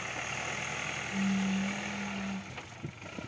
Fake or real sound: real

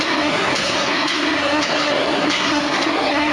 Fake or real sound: fake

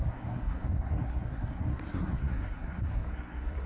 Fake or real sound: fake